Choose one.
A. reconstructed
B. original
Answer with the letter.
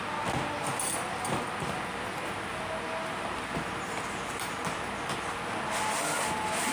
B